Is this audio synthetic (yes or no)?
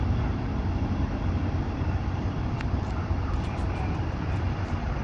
no